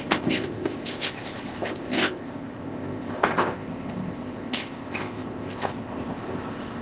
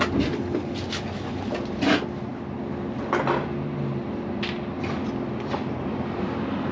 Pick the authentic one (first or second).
second